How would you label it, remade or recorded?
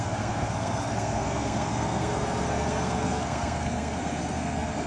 remade